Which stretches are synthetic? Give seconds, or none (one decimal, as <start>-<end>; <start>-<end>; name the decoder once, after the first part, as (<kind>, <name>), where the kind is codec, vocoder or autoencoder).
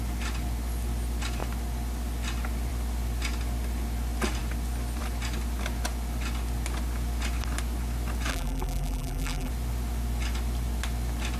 8.3-9.5 (vocoder, BigVGAN v2)